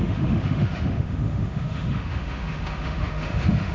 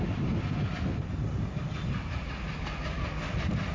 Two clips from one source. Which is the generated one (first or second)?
first